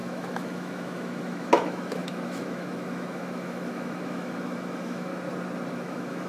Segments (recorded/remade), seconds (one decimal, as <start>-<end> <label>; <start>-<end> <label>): 0.0-5.1 remade; 5.1-5.7 recorded; 5.7-6.3 remade